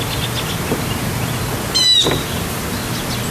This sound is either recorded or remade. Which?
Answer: recorded